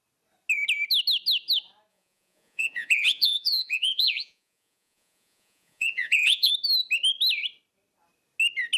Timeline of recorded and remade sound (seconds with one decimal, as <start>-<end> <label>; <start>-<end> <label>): 0.0-1.9 recorded; 1.9-6.5 remade; 6.5-8.8 recorded